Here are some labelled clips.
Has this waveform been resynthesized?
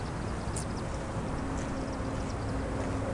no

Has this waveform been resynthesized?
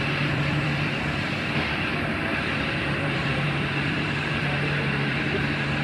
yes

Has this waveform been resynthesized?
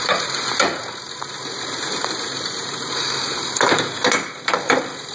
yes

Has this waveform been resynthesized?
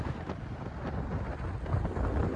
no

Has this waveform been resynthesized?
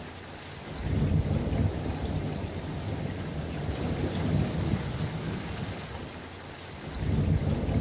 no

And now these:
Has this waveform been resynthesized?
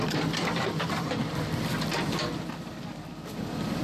yes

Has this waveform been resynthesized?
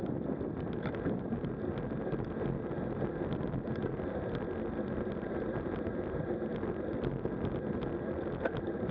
no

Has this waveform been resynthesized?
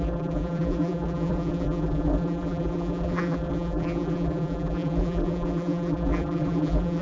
yes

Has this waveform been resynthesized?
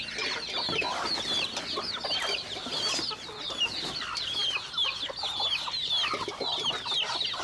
no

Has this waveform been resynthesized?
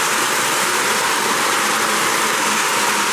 yes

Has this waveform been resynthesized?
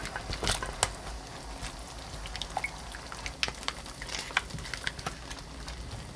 no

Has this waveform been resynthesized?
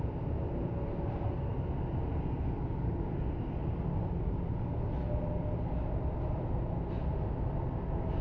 no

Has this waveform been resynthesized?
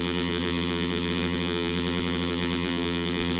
yes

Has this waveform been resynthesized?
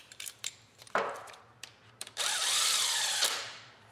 yes